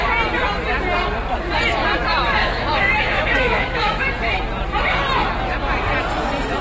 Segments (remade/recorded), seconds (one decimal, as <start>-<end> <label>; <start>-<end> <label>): 0.0-2.4 recorded; 2.4-4.1 remade; 4.1-6.6 recorded

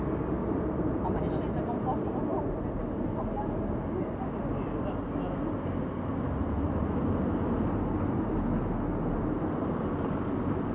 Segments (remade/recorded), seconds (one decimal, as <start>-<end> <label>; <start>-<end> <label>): 0.0-0.4 recorded; 0.4-1.2 remade; 1.2-10.7 recorded

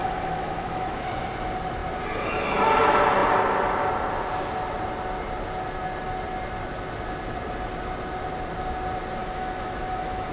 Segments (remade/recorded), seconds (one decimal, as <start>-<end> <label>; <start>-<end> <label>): 0.0-1.1 remade; 1.1-9.2 recorded; 9.2-10.3 remade

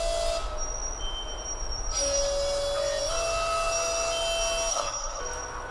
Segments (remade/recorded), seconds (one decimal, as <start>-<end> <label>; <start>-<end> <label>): 0.0-4.7 recorded; 4.7-5.2 remade; 5.2-5.7 recorded

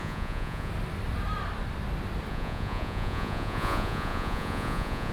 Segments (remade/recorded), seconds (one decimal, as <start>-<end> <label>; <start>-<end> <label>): 0.0-0.7 remade; 0.7-2.3 recorded; 2.3-5.1 remade